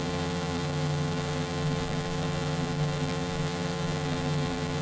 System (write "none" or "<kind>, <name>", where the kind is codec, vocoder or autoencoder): vocoder, BigVGAN v2